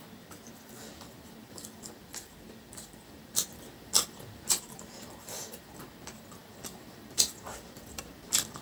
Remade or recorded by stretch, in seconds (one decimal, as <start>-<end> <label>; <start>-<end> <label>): 0.0-1.4 recorded; 1.4-5.7 remade; 5.7-6.4 recorded; 6.4-8.6 remade